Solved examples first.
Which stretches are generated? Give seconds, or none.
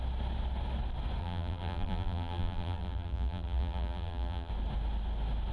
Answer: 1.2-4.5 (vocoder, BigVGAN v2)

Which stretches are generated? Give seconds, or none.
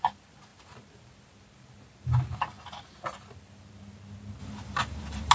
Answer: 4.4-5.3 (vocoder, BigVGAN v2)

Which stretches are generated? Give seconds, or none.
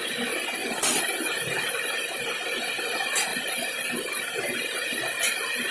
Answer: 0.6-1.9 (vocoder, BigVGAN v2); 3.3-5.0